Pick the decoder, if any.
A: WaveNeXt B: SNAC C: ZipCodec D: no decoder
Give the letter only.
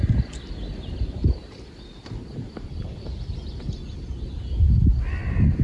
D